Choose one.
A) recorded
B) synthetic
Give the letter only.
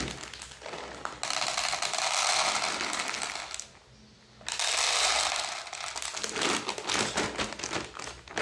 A